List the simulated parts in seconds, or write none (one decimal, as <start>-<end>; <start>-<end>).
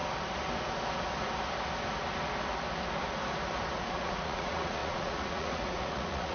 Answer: 3.8-6.3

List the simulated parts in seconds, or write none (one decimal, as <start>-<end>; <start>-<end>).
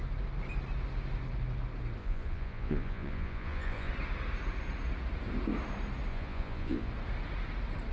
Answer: 2.0-3.9; 6.1-6.9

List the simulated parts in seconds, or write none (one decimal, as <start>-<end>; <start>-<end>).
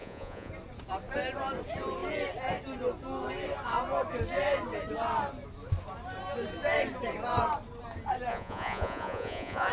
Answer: 0.0-0.5; 8.3-9.7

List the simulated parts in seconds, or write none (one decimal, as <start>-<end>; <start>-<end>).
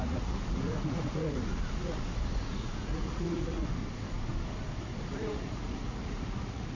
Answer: 0.0-3.8; 5.0-6.7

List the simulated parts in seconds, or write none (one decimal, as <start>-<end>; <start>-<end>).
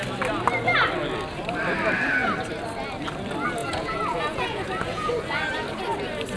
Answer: 3.6-5.1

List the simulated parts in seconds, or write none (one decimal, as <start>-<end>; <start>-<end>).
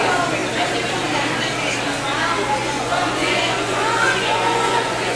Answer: 2.6-5.2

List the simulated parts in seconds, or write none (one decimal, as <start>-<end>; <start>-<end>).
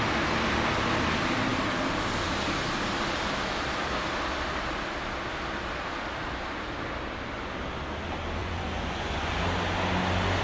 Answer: 8.4-9.3